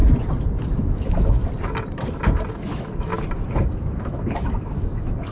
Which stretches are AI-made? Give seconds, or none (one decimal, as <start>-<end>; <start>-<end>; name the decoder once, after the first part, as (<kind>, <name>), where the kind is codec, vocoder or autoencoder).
0.7-1.4 (autoencoder, DAC-VAE); 2.5-3.1; 3.6-5.3